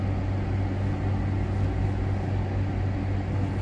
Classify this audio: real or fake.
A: real